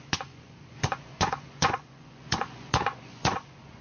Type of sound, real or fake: fake